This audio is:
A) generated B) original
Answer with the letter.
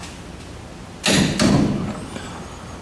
B